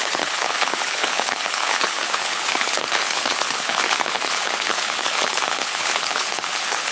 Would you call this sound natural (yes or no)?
no